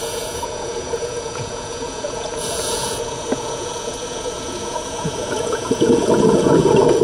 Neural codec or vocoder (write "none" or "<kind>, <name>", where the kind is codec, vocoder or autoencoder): vocoder, Vocos